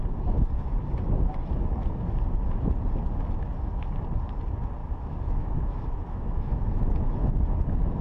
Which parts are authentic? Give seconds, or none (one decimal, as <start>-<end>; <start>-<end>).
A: 0.0-4.8; 6.8-8.0